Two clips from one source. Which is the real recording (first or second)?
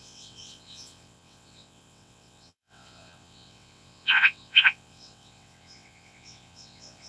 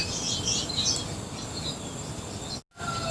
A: second